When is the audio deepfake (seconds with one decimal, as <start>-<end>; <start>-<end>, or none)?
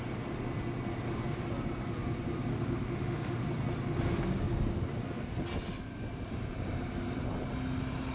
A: 2.5-3.4